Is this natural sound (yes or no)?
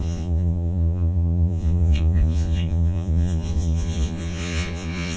no